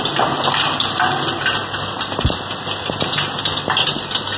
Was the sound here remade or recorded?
recorded